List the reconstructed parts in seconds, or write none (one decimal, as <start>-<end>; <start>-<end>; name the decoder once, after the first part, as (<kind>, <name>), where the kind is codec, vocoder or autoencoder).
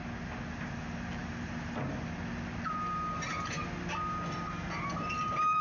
none